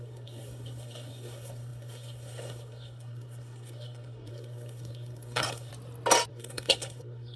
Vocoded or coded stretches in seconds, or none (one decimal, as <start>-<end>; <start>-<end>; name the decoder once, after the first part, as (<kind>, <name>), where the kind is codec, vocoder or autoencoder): 0.0-5.7 (codec, SNAC); 6.3-7.4